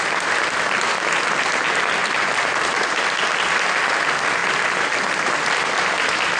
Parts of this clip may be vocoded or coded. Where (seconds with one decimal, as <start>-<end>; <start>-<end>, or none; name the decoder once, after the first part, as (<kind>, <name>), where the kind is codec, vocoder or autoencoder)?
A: 2.0-3.9 (vocoder, BigVGAN v2)